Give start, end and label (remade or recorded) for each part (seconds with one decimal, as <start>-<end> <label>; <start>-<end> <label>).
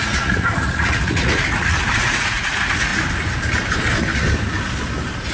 0.0-2.9 remade; 2.9-5.3 recorded